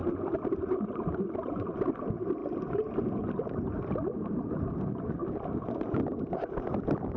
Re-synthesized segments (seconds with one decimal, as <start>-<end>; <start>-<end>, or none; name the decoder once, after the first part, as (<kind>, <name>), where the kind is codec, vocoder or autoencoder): 0.0-1.6 (vocoder, BigVGAN v2)